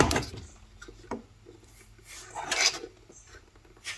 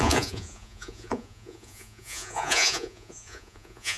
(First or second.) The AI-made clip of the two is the second